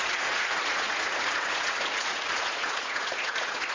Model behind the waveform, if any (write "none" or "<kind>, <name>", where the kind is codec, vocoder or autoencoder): vocoder, Vocos